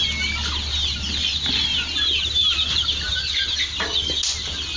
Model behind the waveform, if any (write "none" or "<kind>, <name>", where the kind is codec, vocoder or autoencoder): none